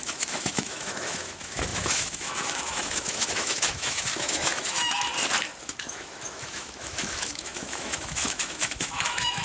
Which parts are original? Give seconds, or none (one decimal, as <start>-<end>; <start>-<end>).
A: 5.1-5.6